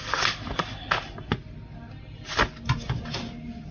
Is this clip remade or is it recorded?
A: recorded